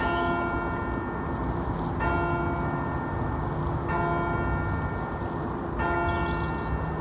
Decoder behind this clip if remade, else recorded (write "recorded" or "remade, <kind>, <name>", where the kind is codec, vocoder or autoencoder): recorded